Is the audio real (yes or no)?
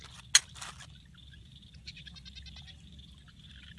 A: yes